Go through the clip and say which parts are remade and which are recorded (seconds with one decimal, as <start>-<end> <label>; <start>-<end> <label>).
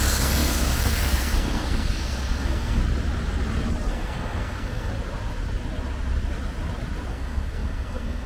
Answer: 0.0-2.8 remade; 2.8-3.9 recorded; 3.9-4.9 remade; 4.9-7.1 recorded; 7.1-8.3 remade